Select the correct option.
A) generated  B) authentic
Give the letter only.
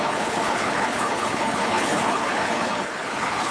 A